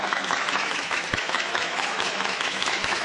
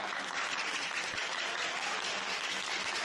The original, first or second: second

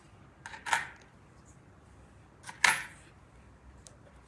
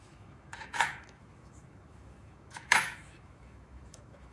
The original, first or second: first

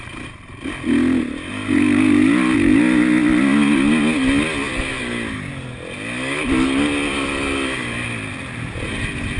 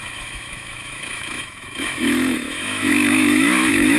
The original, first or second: first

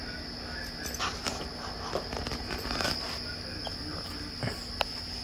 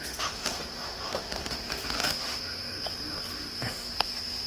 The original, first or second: first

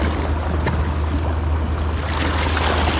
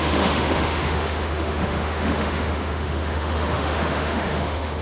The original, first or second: first